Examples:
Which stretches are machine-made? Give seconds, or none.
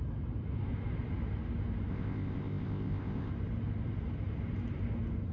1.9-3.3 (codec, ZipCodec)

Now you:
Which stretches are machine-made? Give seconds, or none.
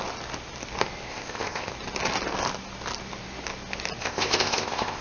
1.1-1.7 (codec, ZipCodec); 4.0-5.0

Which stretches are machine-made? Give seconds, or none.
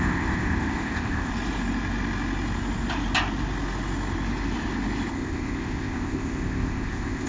0.0-1.3 (codec, ZipCodec); 5.1-7.3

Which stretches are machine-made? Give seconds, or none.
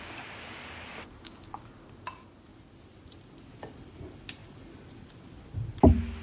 none